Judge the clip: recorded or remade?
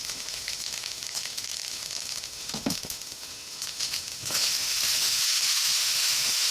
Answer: remade